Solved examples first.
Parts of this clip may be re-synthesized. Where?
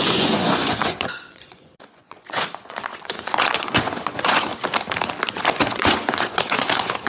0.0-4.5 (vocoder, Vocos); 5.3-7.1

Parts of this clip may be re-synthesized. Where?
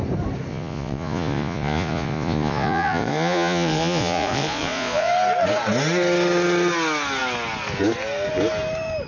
0.5-5.1 (vocoder, Vocos)